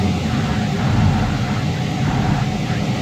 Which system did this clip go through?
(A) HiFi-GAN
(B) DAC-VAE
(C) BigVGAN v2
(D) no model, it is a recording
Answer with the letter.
D